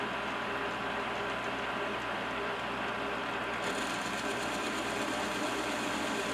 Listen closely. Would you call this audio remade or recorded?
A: recorded